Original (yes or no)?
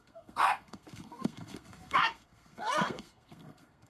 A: no